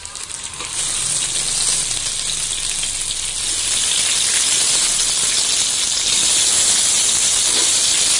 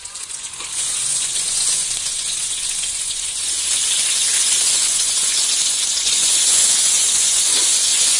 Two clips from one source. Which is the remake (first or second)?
second